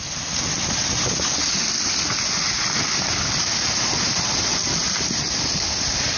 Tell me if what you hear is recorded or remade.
recorded